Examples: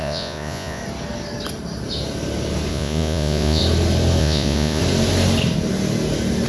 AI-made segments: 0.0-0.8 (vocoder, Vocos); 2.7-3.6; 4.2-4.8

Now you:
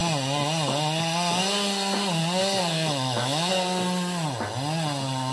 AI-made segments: 2.7-3.5 (autoencoder, DAC-VAE)

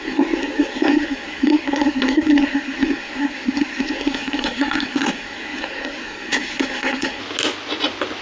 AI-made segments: 0.0-7.2 (codec, SNAC)

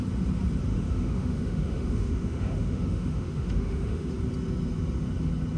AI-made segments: 0.7-4.1 (autoencoder, DAC-VAE)